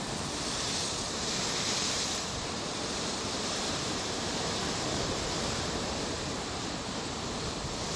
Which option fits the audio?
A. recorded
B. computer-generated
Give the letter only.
B